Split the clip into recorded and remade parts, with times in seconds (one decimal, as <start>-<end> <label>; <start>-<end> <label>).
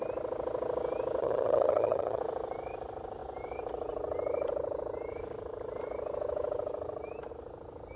0.0-1.2 recorded; 1.2-2.2 remade; 2.2-8.0 recorded